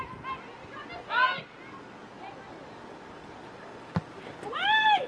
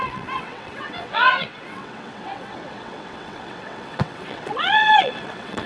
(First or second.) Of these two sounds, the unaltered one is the first